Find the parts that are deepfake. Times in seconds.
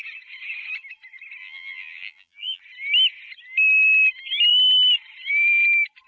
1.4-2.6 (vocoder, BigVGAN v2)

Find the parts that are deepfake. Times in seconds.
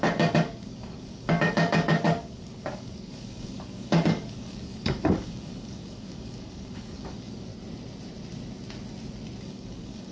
0.0-7.5 (codec, DAC); 9.4-10.1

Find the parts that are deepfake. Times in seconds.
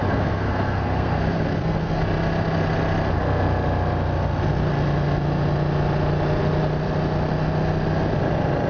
0.0-2.0 (codec, SNAC)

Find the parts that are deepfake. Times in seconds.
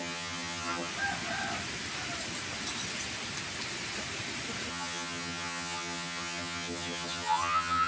0.0-0.9 (vocoder, HiFi-GAN); 4.7-7.9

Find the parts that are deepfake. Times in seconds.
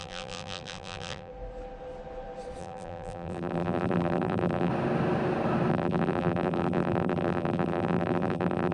0.0-1.3 (vocoder, BigVGAN v2); 2.6-4.7; 5.7-8.7